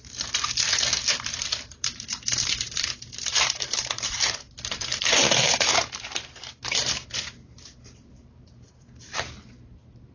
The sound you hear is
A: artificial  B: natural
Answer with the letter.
A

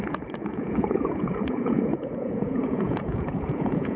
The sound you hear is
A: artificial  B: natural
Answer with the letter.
A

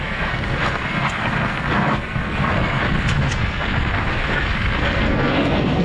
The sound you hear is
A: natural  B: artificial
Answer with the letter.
B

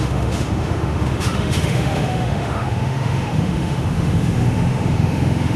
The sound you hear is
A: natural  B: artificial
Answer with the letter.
B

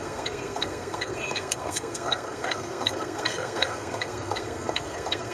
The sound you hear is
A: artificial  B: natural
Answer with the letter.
A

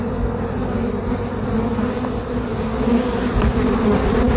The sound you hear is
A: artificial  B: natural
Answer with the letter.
B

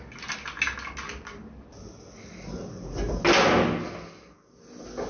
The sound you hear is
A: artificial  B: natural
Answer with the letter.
B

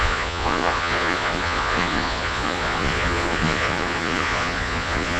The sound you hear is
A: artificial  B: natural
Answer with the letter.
A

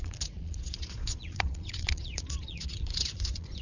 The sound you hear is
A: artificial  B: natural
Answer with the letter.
A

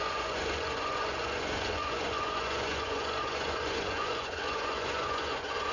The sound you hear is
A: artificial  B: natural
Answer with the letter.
A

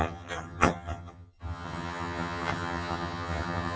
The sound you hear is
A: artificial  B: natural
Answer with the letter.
A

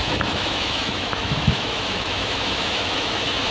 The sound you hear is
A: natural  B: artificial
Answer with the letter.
B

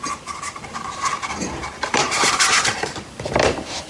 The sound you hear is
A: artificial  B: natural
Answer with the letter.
A